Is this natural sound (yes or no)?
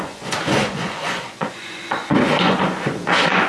no